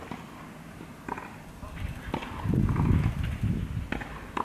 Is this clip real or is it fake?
real